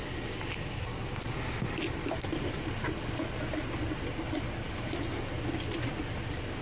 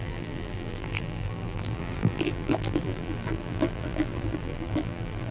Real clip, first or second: first